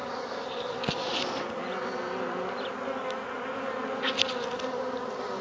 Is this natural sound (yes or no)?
yes